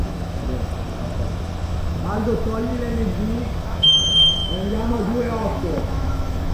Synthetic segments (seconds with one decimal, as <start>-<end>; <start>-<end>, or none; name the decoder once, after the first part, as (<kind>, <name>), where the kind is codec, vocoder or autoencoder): 0.0-0.4 (autoencoder, DAC-VAE); 1.9-2.7; 3.6-6.5